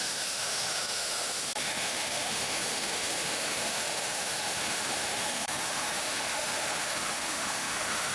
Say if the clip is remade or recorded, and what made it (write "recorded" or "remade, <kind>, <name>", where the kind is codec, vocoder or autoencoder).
remade, autoencoder, DAC-VAE